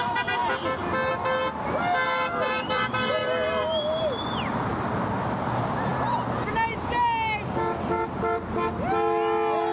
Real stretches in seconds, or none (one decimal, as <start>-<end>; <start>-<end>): 0.0-9.7